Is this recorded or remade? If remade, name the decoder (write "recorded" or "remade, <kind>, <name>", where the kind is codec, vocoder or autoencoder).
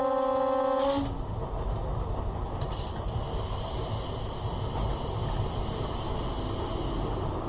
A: recorded